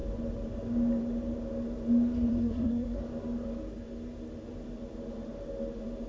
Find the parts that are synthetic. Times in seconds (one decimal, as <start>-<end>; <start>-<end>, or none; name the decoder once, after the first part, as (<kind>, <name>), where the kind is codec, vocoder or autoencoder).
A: 2.3-3.0 (codec, SNAC)